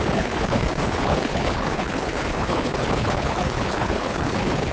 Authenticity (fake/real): fake